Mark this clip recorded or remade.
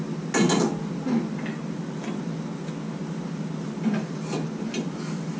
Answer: recorded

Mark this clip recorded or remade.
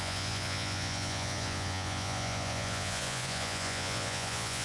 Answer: remade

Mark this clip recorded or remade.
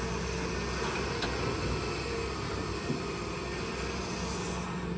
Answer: recorded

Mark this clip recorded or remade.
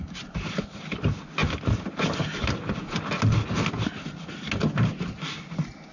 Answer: recorded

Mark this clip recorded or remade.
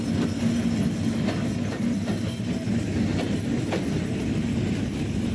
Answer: recorded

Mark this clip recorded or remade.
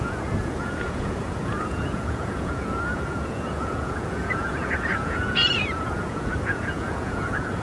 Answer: remade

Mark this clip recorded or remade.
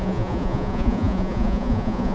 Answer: remade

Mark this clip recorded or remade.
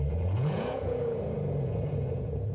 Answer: remade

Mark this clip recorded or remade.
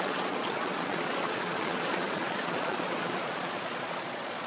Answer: remade